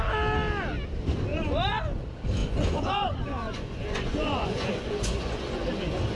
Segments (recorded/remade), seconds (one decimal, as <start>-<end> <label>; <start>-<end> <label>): 0.0-1.3 recorded; 1.3-2.0 remade; 2.0-2.4 recorded; 2.4-5.7 remade; 5.7-6.2 recorded